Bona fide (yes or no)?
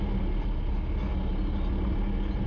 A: yes